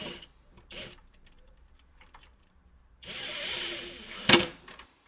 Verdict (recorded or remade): remade